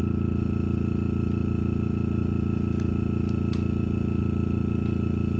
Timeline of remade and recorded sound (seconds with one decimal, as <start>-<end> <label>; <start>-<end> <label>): 0.0-5.4 recorded